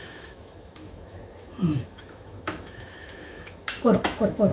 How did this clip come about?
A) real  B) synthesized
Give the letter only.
B